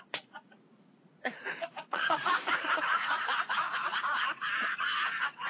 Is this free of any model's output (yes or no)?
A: no